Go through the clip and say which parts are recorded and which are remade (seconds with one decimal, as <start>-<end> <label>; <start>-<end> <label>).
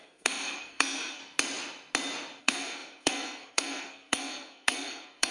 0.0-1.2 remade; 1.2-2.4 recorded; 2.4-5.3 remade